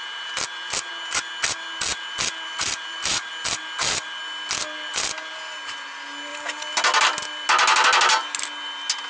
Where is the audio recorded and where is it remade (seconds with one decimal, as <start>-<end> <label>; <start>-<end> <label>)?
0.0-0.9 remade; 0.9-1.9 recorded; 1.9-3.3 remade; 3.3-9.1 recorded